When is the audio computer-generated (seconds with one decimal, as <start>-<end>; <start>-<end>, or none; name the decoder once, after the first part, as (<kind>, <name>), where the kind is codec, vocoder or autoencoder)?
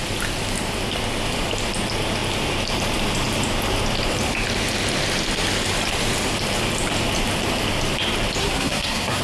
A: 8.4-9.2 (codec, SNAC)